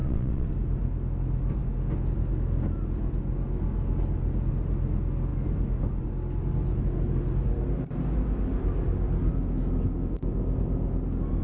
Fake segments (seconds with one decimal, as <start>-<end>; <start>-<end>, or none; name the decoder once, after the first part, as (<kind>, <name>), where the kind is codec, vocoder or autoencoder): 0.0-0.5 (vocoder, WaveNeXt)